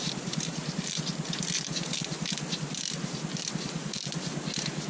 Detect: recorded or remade remade